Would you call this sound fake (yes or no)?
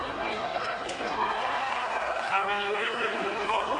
yes